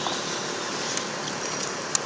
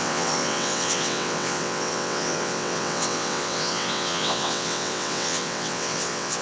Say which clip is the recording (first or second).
first